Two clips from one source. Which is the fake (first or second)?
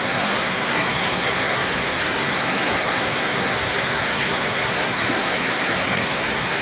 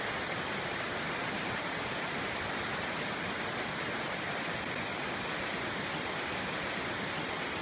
first